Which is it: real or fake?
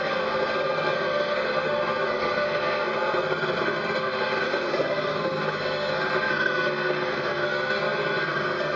fake